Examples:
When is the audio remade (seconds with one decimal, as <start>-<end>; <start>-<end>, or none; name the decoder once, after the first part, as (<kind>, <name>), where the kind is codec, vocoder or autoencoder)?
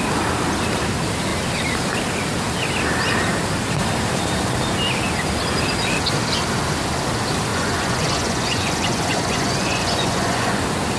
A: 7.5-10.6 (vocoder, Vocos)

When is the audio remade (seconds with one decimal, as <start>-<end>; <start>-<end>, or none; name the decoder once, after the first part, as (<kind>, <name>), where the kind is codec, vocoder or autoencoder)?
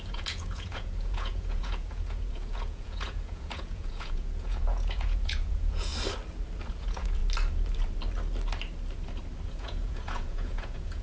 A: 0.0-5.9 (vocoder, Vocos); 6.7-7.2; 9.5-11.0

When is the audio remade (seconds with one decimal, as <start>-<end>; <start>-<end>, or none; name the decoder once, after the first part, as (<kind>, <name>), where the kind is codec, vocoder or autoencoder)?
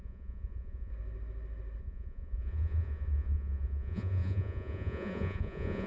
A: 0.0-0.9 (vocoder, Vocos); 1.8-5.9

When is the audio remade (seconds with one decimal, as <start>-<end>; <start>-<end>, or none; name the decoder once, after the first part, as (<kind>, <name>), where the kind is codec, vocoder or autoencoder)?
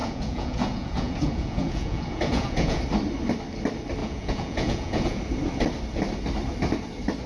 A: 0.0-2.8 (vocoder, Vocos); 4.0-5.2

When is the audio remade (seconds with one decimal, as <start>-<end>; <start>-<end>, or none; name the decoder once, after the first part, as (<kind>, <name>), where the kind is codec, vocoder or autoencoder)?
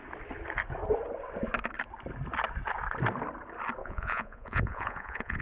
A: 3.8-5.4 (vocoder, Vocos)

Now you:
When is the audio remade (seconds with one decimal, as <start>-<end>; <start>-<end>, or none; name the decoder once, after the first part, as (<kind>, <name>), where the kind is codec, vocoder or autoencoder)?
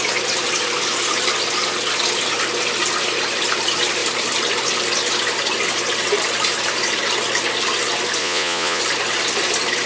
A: 8.2-8.8 (vocoder, Vocos)